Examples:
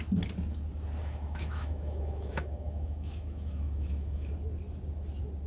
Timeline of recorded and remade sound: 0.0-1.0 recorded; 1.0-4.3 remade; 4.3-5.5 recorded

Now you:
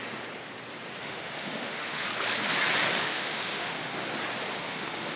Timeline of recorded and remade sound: 0.0-1.0 recorded; 1.0-2.1 remade; 2.1-3.0 recorded; 3.0-3.9 remade; 3.9-4.5 recorded; 4.5-5.2 remade

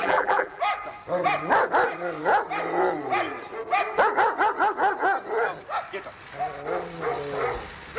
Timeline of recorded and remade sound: 0.0-0.6 remade; 0.6-8.0 recorded

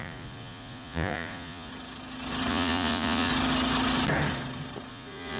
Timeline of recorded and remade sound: 0.0-1.7 remade; 1.7-2.5 recorded; 2.5-3.3 remade; 3.3-4.9 recorded; 4.9-5.4 remade

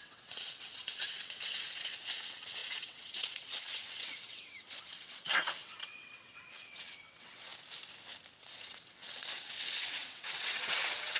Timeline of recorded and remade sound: 0.0-7.5 remade; 7.5-8.4 recorded; 8.4-11.2 remade